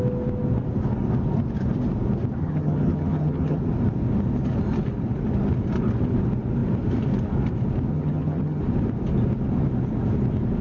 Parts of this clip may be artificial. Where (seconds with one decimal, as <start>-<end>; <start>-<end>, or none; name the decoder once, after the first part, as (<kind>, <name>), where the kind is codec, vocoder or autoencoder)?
2.4-3.6 (vocoder, HiFi-GAN); 7.9-8.6

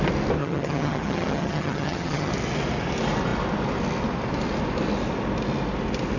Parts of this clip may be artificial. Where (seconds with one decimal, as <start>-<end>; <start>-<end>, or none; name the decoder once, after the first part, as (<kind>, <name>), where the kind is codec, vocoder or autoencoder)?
0.4-2.3 (vocoder, HiFi-GAN)

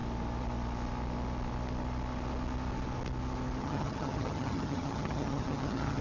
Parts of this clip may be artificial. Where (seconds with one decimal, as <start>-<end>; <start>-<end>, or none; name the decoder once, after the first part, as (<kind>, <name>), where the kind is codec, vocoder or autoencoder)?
3.6-6.0 (vocoder, HiFi-GAN)

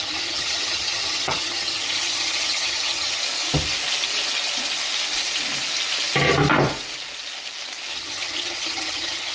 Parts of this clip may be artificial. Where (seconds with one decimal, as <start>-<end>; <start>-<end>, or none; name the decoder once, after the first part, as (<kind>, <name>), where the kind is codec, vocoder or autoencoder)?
0.0-3.2 (vocoder, HiFi-GAN); 7.9-9.3

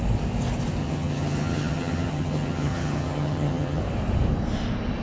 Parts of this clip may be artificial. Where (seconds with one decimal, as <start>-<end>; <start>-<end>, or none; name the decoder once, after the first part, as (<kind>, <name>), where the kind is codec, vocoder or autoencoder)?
0.8-3.8 (vocoder, HiFi-GAN)

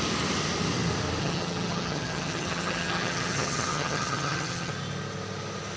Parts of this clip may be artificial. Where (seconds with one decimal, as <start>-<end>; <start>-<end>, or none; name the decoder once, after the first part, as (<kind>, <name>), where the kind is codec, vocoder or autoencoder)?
1.2-4.7 (vocoder, HiFi-GAN)

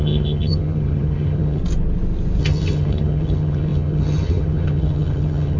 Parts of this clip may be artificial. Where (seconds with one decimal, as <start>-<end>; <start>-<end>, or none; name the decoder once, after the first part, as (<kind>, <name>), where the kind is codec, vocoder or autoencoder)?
0.0-1.6 (vocoder, HiFi-GAN); 2.4-5.6

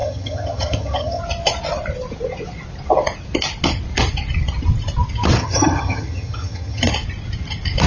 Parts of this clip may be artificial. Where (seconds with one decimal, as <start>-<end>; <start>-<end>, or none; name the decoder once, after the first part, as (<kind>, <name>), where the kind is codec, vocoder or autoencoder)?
0.0-1.2 (vocoder, HiFi-GAN); 5.4-6.9